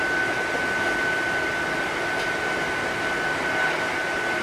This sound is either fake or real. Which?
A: real